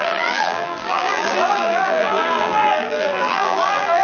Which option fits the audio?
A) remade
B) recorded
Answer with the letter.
A